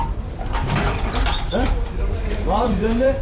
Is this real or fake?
fake